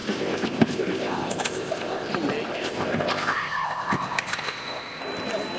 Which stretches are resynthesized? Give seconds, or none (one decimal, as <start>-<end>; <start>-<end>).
0.0-2.1; 2.5-5.0